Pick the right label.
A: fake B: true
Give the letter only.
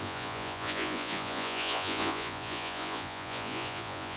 A